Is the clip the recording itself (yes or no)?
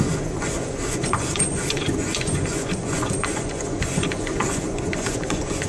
no